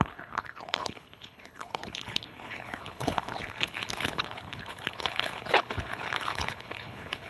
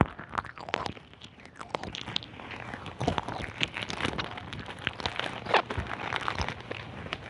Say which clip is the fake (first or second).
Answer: first